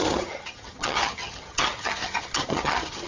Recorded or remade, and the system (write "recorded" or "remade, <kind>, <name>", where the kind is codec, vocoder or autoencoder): remade, vocoder, HiFi-GAN